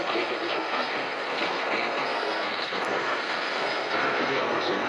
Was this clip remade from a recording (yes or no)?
yes